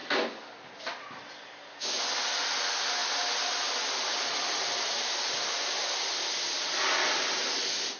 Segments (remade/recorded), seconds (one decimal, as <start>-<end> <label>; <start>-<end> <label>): 0.0-8.0 recorded